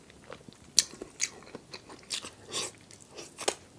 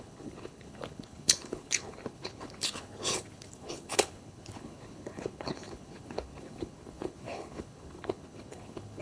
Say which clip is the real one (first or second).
first